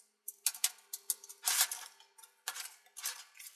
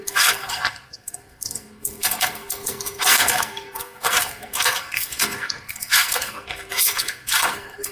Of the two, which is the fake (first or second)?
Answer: second